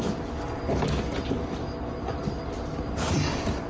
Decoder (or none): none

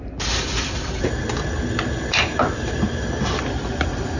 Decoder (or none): none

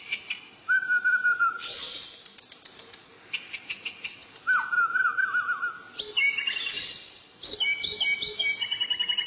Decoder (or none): none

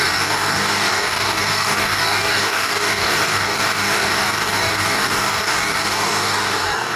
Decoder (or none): codec, DAC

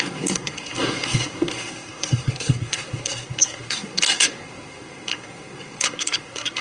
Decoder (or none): codec, SNAC